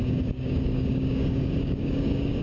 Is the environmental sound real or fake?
fake